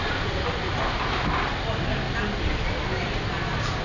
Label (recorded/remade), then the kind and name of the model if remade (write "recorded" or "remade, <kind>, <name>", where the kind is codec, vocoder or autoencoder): recorded